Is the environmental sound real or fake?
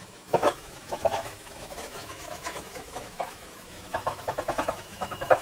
fake